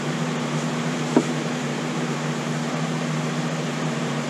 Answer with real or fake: fake